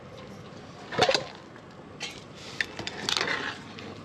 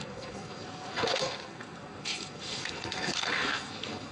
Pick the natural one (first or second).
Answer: first